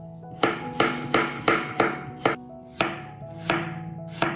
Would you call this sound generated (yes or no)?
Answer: no